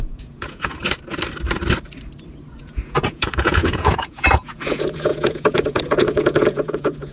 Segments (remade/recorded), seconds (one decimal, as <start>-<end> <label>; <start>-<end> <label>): 0.0-0.8 remade; 0.8-2.6 recorded; 2.6-7.1 remade